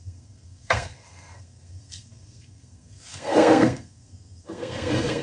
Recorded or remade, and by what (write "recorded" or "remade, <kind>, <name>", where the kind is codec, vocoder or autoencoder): remade, codec, SNAC